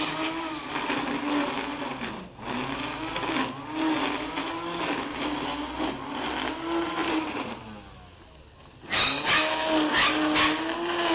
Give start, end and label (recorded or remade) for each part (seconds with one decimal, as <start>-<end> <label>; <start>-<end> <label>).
0.0-7.0 recorded; 7.0-7.6 remade; 7.6-11.1 recorded